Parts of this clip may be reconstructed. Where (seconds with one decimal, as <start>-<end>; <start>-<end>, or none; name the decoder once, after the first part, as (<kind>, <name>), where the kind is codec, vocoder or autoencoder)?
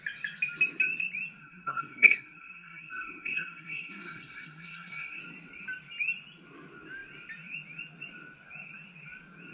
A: 1.4-5.2 (codec, SNAC)